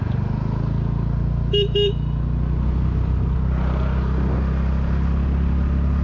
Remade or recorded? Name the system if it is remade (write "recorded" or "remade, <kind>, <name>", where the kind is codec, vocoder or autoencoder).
recorded